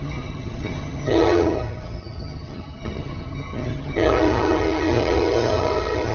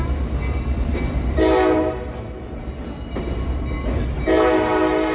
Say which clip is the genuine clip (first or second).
second